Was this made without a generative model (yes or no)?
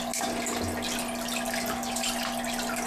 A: yes